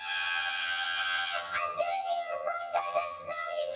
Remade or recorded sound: remade